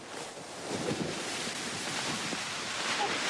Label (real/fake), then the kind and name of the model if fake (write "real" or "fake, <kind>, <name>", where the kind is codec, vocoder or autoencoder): real